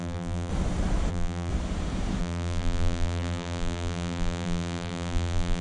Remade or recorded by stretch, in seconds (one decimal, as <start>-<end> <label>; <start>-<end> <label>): 0.0-0.5 remade; 0.5-1.1 recorded; 1.1-1.5 remade; 1.5-2.2 recorded; 2.2-5.6 remade